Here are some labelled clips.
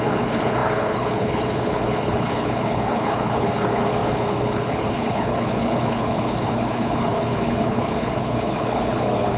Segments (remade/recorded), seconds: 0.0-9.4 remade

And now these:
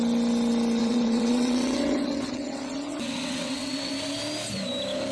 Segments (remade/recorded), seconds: 0.0-0.8 recorded; 0.8-3.9 remade; 3.9-5.1 recorded

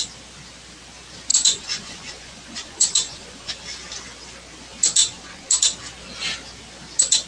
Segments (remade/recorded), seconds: 0.0-1.3 recorded; 1.3-3.5 remade; 3.5-5.0 recorded; 5.0-5.5 remade; 5.5-7.3 recorded

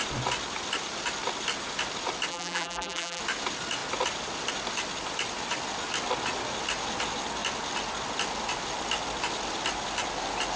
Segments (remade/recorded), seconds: 0.0-2.3 recorded; 2.3-3.2 remade; 3.2-10.6 recorded